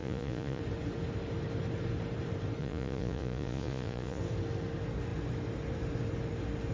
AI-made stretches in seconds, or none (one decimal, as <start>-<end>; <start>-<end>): 0.0-0.6; 2.6-4.2